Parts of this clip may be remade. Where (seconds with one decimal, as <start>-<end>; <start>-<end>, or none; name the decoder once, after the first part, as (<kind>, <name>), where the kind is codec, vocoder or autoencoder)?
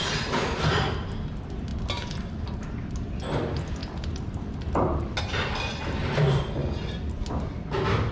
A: 3.8-4.4 (vocoder, BigVGAN v2)